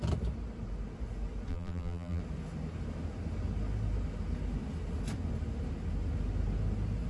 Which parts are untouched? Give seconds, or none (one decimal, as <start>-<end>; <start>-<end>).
0.0-1.5; 2.2-7.1